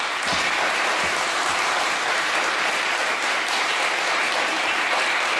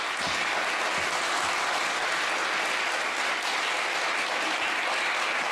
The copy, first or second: first